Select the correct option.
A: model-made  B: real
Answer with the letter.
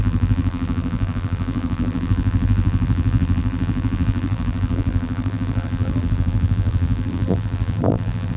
A